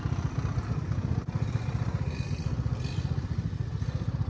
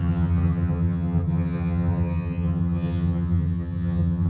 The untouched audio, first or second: first